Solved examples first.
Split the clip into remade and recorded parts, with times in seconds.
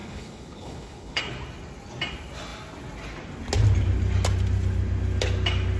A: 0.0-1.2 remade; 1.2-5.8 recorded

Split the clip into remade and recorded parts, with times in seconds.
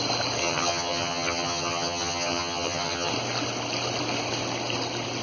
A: 0.0-0.4 recorded; 0.4-3.1 remade; 3.1-5.2 recorded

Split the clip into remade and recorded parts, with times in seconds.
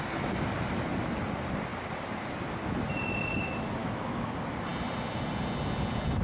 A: 0.0-3.8 recorded; 3.8-4.3 remade; 4.3-6.2 recorded